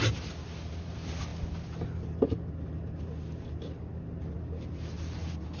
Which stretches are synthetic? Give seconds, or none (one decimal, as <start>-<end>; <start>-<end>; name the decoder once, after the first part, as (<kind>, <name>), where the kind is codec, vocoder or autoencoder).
none